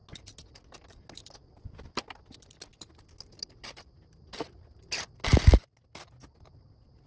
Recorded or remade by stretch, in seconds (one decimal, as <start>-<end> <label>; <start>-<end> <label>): 0.0-7.1 recorded

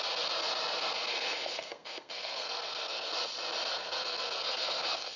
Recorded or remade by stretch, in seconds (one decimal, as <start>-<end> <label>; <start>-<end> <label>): 0.0-1.1 recorded; 1.1-3.1 remade; 3.1-3.7 recorded; 3.7-5.2 remade

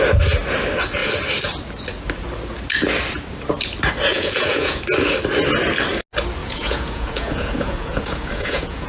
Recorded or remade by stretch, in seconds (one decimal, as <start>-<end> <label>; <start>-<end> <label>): 0.0-4.1 recorded; 4.1-4.8 remade; 4.8-6.4 recorded; 6.4-8.9 remade

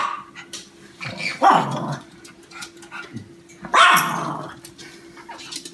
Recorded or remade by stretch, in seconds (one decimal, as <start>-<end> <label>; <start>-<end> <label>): 0.0-1.4 recorded; 1.4-2.1 remade; 2.1-5.7 recorded

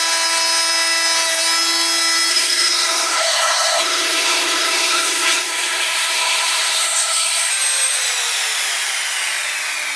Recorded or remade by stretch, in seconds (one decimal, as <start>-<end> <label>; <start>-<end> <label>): 0.0-2.3 recorded; 2.3-7.5 remade; 7.5-10.0 recorded